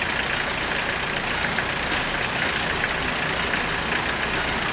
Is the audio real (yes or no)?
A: yes